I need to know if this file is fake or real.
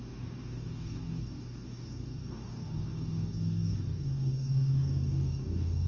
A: fake